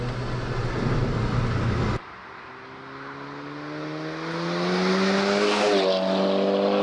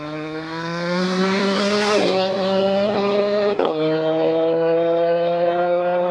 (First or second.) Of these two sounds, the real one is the first